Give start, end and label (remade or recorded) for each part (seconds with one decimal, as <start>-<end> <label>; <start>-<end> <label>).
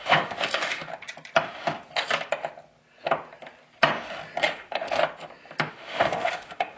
0.0-0.9 remade; 0.9-4.4 recorded; 4.4-5.0 remade; 5.0-5.7 recorded; 5.7-6.8 remade